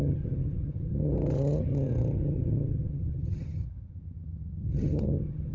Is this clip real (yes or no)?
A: no